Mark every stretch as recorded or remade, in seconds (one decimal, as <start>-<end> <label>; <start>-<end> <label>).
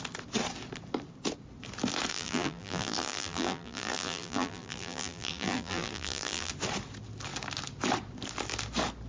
0.0-2.1 recorded; 2.1-6.5 remade; 6.5-9.1 recorded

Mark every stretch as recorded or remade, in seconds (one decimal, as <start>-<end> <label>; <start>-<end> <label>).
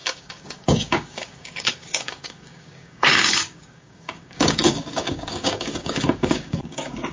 0.0-7.1 remade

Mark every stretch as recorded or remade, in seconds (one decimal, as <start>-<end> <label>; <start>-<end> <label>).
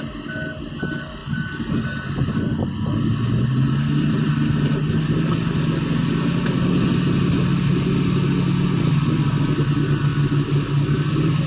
0.0-11.5 recorded